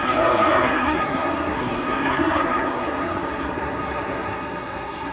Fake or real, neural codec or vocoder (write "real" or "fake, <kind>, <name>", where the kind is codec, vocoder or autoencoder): fake, codec, SNAC